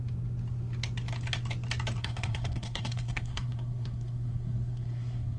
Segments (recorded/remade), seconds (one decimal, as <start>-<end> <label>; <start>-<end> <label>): 0.0-2.0 recorded; 2.0-5.4 remade